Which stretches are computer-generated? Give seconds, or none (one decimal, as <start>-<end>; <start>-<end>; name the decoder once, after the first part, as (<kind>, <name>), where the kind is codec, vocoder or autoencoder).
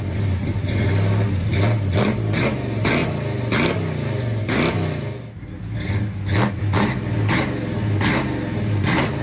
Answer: none